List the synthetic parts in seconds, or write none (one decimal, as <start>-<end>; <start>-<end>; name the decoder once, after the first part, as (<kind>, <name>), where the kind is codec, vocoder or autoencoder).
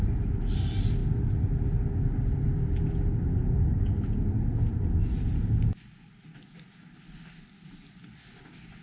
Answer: none